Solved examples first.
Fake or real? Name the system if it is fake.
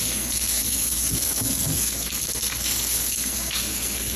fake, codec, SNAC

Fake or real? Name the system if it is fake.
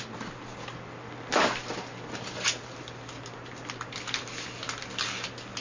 real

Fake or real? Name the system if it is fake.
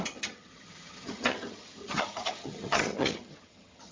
fake, vocoder, HiFi-GAN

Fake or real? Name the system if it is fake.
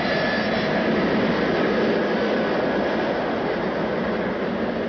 real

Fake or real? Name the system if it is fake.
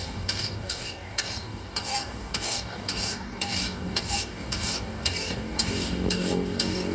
fake, codec, DAC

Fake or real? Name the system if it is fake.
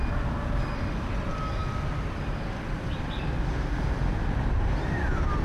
real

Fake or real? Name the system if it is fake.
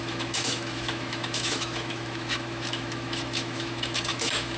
fake, autoencoder, DAC-VAE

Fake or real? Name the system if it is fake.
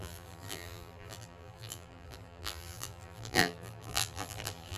fake, vocoder, BigVGAN v2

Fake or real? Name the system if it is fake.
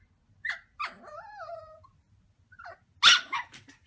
real